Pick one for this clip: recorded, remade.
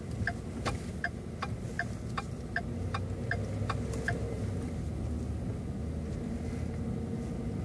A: recorded